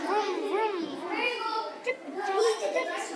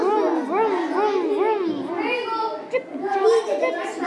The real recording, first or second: second